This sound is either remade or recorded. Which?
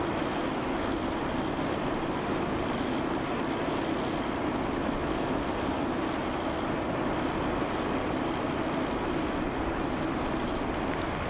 recorded